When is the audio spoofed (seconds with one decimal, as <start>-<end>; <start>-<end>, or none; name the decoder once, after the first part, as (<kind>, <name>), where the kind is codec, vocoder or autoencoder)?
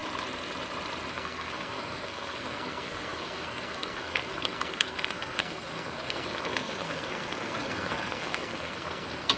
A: 1.1-9.4 (codec, SNAC)